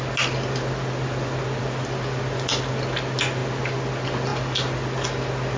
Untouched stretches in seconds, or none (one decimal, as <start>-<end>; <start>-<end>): 0.0-5.6